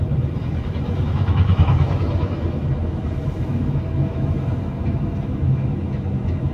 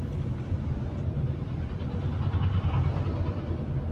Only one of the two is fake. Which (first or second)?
first